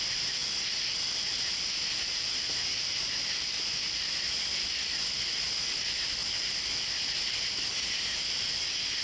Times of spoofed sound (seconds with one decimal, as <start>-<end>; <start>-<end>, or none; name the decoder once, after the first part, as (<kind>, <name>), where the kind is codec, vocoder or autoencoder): none

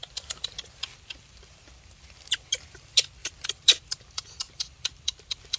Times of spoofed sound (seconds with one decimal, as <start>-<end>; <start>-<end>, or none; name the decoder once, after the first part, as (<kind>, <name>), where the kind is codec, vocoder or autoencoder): 0.0-2.5 (vocoder, BigVGAN v2); 3.2-5.6

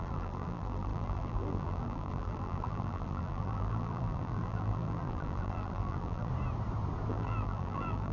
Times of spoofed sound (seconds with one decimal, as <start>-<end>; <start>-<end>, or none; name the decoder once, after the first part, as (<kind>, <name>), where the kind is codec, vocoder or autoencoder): 0.0-6.3 (vocoder, BigVGAN v2); 7.1-8.1

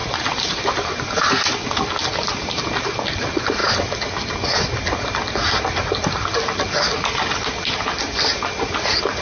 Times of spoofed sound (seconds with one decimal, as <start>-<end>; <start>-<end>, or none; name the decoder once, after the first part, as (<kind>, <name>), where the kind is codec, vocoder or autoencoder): 0.0-1.4 (vocoder, BigVGAN v2)